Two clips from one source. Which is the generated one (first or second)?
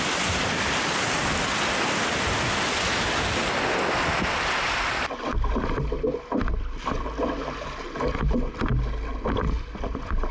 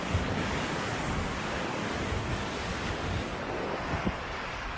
second